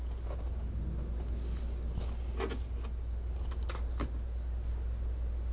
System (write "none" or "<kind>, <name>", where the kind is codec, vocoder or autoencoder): none